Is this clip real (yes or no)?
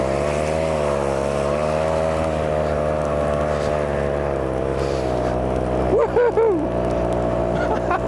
yes